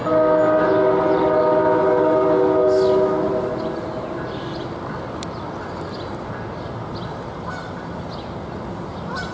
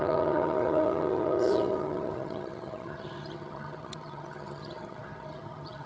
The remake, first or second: second